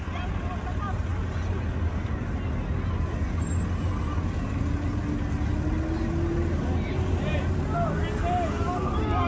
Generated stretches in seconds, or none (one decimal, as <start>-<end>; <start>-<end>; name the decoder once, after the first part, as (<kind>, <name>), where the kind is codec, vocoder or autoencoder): none